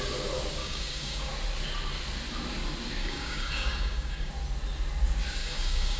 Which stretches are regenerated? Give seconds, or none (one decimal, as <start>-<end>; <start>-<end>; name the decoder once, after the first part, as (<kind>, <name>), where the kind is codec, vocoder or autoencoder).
0.6-1.3 (codec, DAC); 3.0-4.3; 5.4-6.0